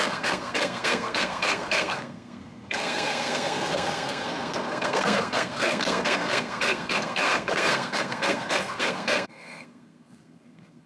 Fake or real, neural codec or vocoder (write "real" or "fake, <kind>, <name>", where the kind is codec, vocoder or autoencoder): fake, codec, SNAC